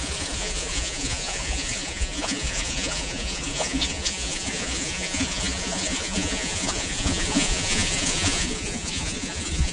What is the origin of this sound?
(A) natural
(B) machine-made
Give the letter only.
B